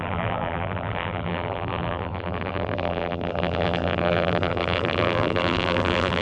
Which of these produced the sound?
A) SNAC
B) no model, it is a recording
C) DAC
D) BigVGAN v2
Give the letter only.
D